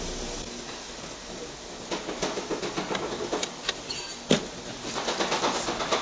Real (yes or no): yes